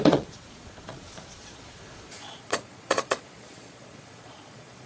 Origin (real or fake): fake